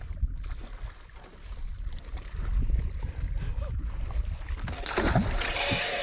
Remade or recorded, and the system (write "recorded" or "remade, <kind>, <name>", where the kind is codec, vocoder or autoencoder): recorded